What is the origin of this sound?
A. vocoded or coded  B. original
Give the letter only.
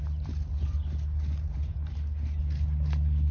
B